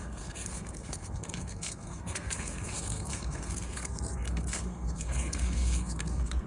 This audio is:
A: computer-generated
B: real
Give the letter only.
A